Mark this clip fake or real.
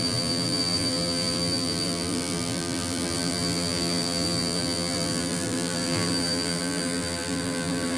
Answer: fake